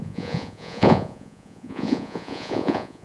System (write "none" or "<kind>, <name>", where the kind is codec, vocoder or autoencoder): vocoder, Vocos